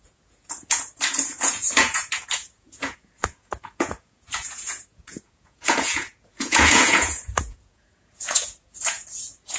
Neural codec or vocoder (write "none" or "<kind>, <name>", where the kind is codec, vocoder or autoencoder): vocoder, Vocos